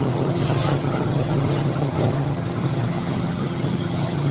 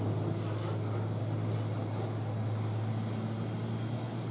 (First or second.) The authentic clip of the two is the second